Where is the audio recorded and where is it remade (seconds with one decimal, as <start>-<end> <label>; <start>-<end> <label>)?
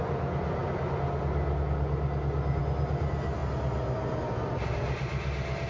0.0-5.7 recorded